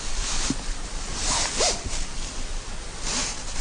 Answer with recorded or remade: recorded